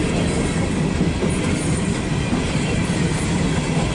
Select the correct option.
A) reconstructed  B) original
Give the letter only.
B